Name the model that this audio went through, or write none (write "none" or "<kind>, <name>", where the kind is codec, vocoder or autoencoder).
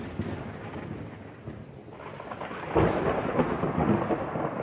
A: none